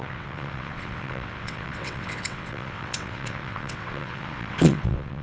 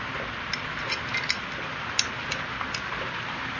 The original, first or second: second